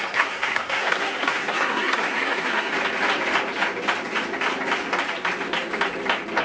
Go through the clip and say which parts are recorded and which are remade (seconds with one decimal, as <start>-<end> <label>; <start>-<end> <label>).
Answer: 0.0-2.7 remade; 2.7-6.4 recorded